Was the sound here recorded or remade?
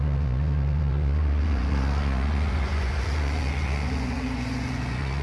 remade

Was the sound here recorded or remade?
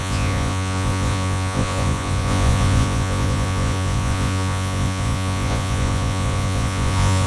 remade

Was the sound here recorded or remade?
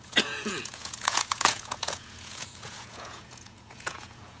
remade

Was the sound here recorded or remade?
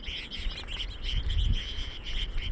recorded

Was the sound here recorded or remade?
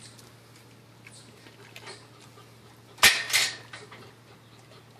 recorded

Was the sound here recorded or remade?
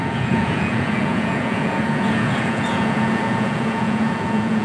remade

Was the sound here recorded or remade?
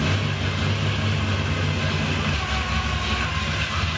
recorded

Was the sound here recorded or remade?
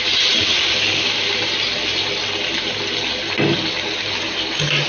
recorded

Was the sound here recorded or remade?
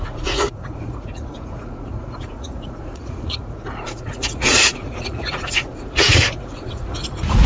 remade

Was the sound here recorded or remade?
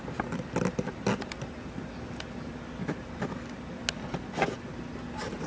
recorded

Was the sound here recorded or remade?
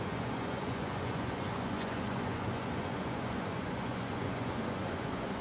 remade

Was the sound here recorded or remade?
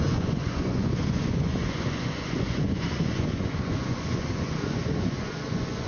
remade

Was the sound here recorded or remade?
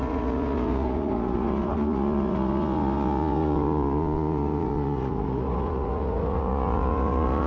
remade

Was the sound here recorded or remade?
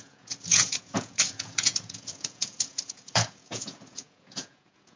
remade